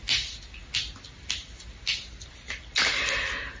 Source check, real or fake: real